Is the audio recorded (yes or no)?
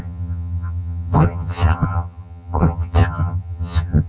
no